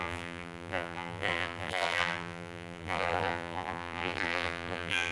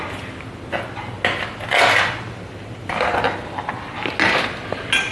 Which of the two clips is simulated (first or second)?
first